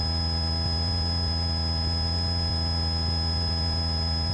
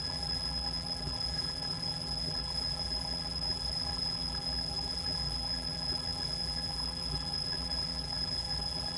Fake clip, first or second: second